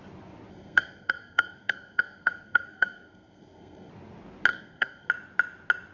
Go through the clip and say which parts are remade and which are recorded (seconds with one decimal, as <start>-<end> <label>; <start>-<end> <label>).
0.0-0.5 recorded; 0.5-3.9 remade; 3.9-4.5 recorded; 4.5-5.1 remade; 5.1-5.9 recorded

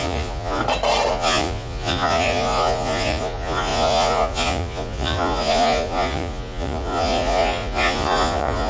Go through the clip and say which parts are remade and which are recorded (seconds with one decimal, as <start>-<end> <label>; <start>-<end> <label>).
0.0-0.6 remade; 0.6-1.1 recorded; 1.1-8.7 remade

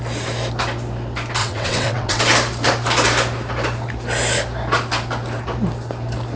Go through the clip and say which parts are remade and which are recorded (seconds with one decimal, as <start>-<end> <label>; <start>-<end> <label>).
0.0-1.4 recorded; 1.4-2.2 remade; 2.2-6.4 recorded

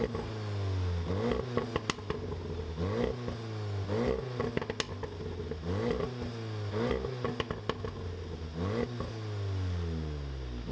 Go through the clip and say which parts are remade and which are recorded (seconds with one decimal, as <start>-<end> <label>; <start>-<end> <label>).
0.0-10.7 recorded